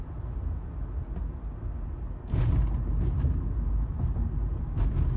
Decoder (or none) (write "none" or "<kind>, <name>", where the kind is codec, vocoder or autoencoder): none